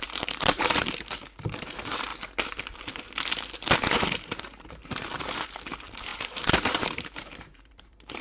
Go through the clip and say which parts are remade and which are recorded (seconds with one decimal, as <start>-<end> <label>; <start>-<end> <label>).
0.0-2.1 remade; 2.1-3.7 recorded; 3.7-8.2 remade